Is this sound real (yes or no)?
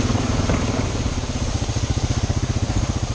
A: no